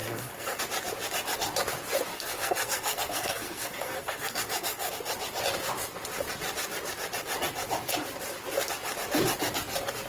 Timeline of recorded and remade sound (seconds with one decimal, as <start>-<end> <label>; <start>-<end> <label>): 0.0-0.6 remade; 0.6-2.1 recorded; 2.1-4.9 remade; 4.9-10.1 recorded